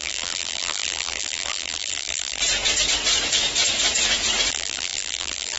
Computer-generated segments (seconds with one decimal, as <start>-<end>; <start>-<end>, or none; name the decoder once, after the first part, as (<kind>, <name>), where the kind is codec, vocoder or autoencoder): 0.0-2.4 (vocoder, BigVGAN v2); 4.5-5.6